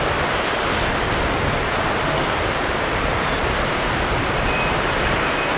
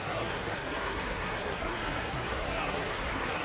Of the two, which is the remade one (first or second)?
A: second